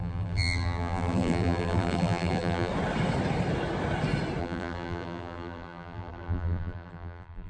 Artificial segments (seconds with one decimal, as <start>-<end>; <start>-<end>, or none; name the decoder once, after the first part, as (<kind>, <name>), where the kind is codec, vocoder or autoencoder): 0.0-2.7 (vocoder, BigVGAN v2); 4.4-7.5